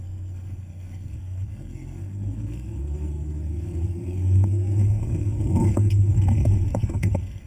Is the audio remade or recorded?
remade